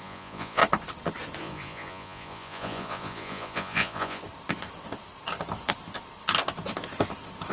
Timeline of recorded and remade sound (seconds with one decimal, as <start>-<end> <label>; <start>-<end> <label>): 0.0-0.6 remade; 0.6-1.4 recorded; 1.4-4.2 remade; 4.2-7.5 recorded